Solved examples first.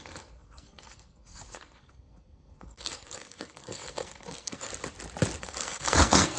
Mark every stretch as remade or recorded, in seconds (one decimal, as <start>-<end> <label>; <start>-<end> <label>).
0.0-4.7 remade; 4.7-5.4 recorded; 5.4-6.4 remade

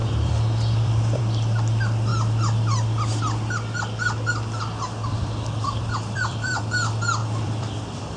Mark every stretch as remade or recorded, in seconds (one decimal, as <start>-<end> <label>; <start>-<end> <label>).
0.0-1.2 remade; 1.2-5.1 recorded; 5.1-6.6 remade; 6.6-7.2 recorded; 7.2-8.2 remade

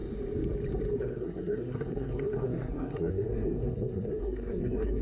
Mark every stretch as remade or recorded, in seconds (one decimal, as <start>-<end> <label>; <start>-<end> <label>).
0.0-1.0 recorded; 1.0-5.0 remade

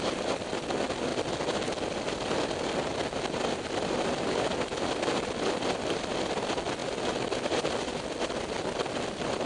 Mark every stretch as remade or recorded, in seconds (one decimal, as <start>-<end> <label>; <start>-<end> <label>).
0.0-9.5 recorded

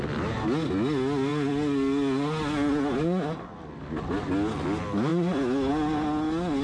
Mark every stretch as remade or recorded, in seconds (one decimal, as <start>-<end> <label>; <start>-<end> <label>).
0.0-6.6 recorded

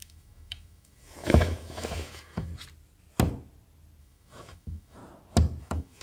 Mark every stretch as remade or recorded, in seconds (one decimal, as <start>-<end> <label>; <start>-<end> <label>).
0.0-2.5 remade; 2.5-4.0 recorded; 4.0-5.0 remade; 5.0-5.6 recorded; 5.6-6.0 remade

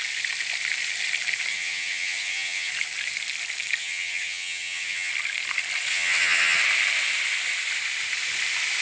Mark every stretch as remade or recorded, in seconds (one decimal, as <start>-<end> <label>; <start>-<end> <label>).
0.0-1.5 recorded; 1.5-2.7 remade; 2.7-3.8 recorded; 3.8-5.1 remade; 5.1-5.9 recorded; 5.9-6.6 remade; 6.6-8.8 recorded